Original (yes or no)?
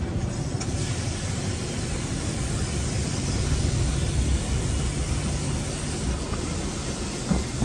no